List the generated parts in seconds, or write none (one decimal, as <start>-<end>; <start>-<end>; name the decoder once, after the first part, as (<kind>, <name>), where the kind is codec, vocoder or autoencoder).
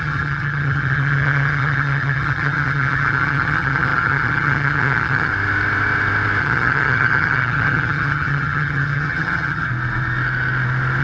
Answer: 0.0-5.3 (vocoder, HiFi-GAN); 6.4-9.7